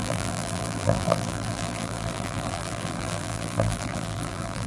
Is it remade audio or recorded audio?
remade